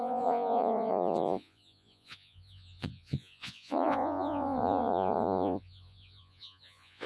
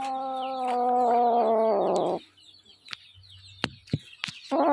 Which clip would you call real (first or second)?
second